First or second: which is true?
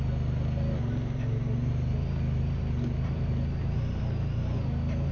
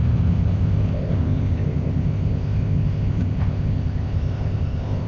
first